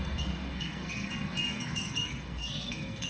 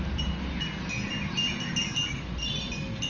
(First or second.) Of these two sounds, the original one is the second